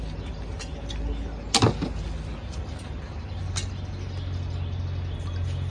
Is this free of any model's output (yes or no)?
yes